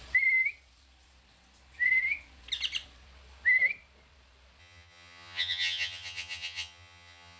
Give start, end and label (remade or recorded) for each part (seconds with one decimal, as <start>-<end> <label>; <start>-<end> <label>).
0.0-4.6 recorded; 4.6-7.4 remade